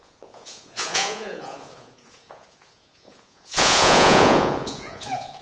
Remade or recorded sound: remade